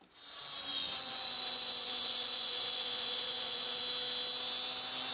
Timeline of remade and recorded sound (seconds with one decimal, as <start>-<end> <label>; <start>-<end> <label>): 0.0-0.7 recorded; 0.7-3.8 remade; 3.8-5.1 recorded